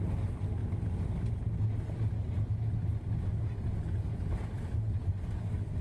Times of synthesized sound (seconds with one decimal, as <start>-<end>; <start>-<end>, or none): none